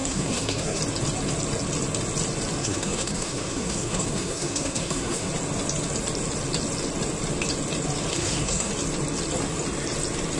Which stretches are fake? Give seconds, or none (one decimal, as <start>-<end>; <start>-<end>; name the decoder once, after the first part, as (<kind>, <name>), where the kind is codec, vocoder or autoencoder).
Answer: 0.0-0.8 (codec, SNAC); 2.6-5.3; 8.1-8.7